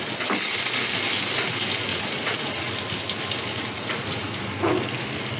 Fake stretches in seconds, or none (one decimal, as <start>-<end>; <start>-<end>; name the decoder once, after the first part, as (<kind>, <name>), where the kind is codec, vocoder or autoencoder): 1.9-2.7 (vocoder, Vocos); 3.5-4.3